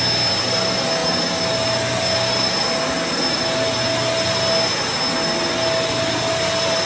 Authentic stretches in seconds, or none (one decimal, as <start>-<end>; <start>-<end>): 0.0-6.9